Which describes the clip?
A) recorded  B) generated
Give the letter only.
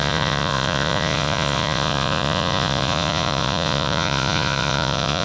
B